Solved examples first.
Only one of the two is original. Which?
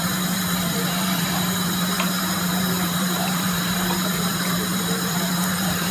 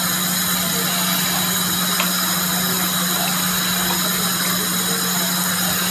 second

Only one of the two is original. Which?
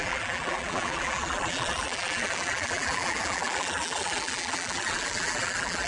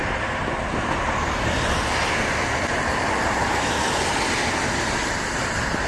second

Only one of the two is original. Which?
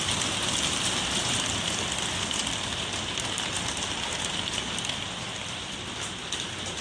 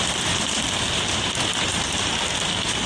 first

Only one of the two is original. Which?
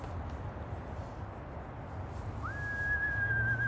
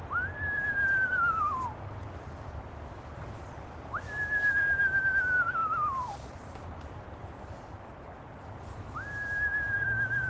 first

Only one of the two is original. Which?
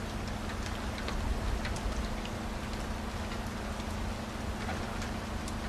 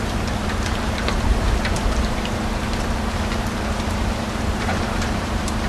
first